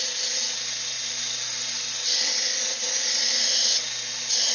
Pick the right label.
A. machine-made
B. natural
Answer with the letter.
B